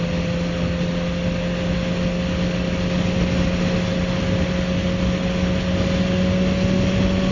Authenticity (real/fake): real